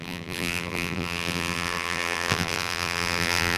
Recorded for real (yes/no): no